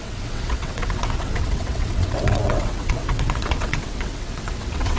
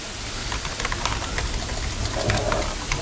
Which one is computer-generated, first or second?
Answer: first